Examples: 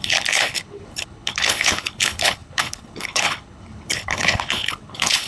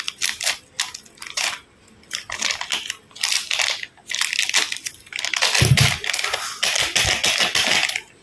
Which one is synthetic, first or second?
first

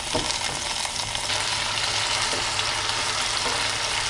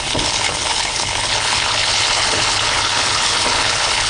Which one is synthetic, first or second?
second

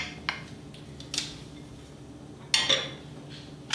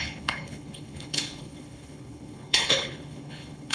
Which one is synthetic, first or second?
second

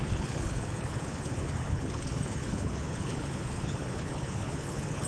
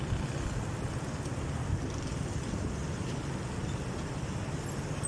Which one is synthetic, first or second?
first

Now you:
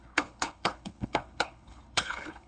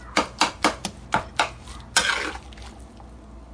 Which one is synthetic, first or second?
first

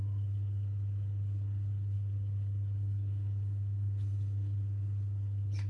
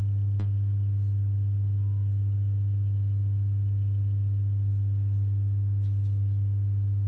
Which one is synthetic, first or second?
first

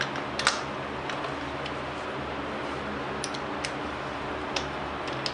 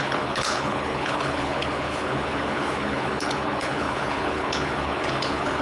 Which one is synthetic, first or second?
second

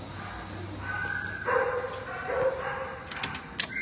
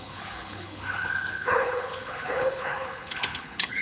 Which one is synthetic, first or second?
second